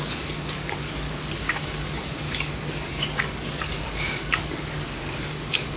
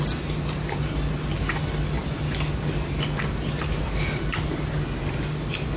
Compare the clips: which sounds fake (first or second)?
first